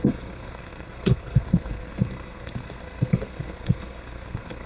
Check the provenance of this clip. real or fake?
fake